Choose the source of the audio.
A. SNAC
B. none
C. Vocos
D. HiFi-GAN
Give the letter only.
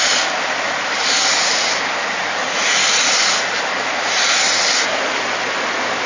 B